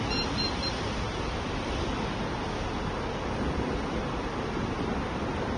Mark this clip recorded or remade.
recorded